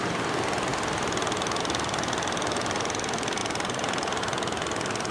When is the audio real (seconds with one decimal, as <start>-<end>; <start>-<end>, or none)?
0.0-5.1